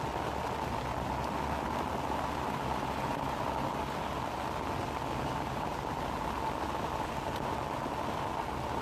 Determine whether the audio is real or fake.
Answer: real